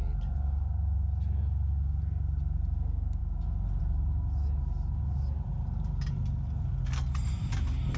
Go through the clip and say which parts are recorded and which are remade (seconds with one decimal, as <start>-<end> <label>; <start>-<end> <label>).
0.0-8.0 recorded